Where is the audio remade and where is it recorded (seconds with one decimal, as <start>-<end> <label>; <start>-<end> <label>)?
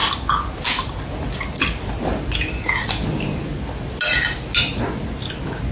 0.0-5.7 recorded